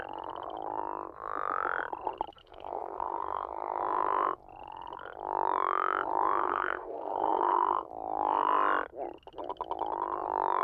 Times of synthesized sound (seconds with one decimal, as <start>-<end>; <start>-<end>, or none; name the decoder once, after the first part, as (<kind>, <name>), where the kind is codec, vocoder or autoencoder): 2.4-3.8 (codec, SNAC); 6.4-7.9